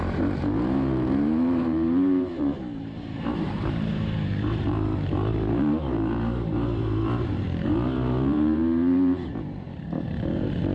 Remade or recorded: remade